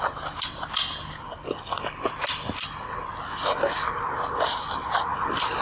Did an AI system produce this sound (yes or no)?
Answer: no